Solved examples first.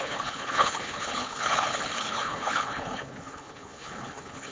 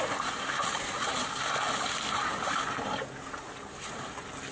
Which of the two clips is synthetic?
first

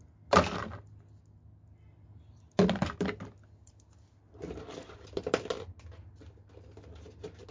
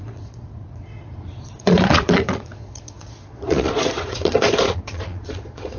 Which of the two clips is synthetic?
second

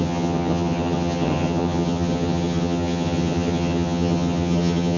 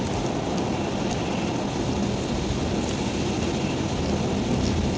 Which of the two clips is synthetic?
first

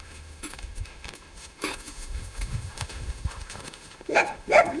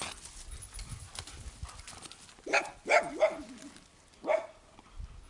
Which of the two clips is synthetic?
first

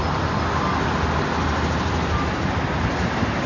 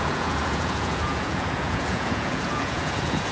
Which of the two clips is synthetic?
second